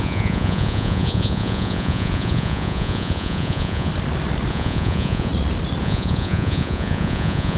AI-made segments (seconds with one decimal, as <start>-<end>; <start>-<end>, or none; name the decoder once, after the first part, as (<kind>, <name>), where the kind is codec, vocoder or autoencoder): 0.0-3.9 (vocoder, Vocos); 4.5-5.3; 5.8-7.6